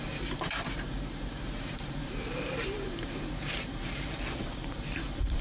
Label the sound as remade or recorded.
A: remade